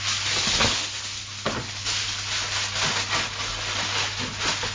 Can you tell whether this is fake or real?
real